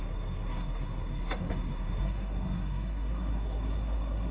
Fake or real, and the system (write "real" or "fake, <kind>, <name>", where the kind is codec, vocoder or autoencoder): fake, codec, SNAC